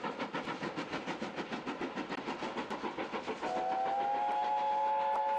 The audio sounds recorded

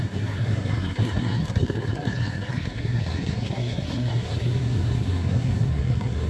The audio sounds remade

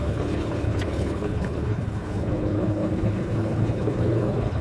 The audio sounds remade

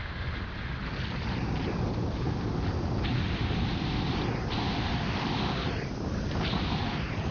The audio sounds recorded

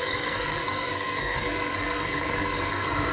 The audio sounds remade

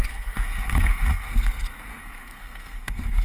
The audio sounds remade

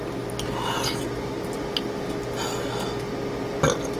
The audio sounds recorded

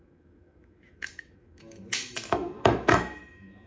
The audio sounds remade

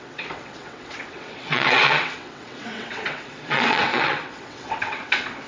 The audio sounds remade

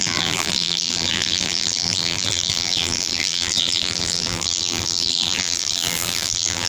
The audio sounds remade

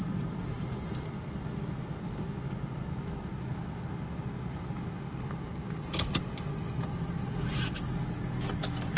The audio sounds recorded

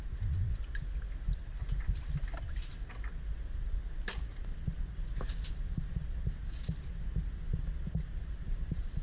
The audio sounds recorded